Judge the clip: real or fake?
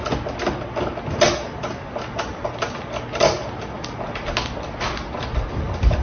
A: real